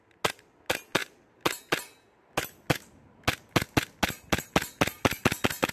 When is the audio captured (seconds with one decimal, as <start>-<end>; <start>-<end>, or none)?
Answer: 0.0-5.7